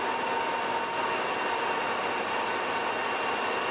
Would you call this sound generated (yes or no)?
no